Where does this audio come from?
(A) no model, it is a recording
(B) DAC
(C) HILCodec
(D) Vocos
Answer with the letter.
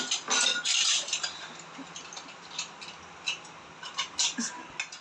A